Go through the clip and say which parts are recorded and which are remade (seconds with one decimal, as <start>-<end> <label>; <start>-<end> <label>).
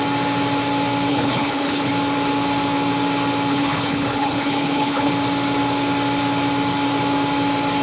0.0-1.1 recorded; 1.1-1.9 remade; 1.9-3.5 recorded; 3.5-5.1 remade; 5.1-7.8 recorded